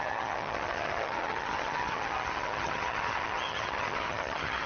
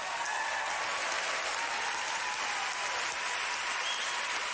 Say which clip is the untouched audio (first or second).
second